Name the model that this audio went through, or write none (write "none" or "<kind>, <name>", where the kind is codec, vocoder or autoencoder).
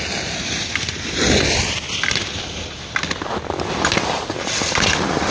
none